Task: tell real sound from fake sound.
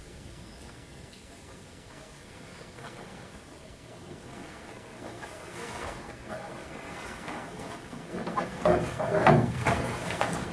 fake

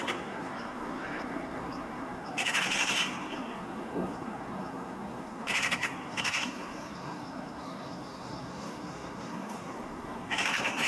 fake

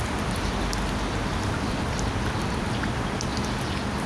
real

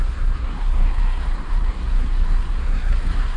fake